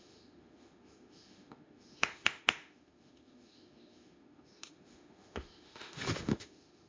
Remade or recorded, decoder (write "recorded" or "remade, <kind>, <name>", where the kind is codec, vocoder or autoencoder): remade, autoencoder, DAC-VAE